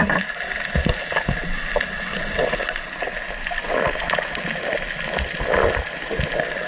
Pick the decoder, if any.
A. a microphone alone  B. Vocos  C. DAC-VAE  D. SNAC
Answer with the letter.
A